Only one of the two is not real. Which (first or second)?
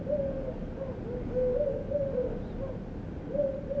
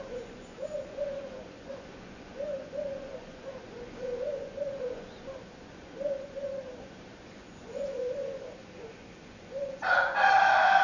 second